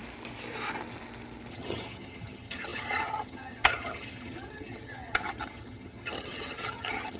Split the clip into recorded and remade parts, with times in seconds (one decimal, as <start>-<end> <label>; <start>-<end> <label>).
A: 0.0-1.5 recorded; 1.5-7.2 remade